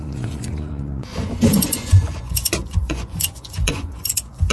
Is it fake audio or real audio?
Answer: fake